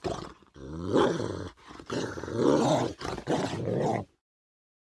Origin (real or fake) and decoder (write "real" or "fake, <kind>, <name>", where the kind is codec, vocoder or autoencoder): fake, vocoder, Vocos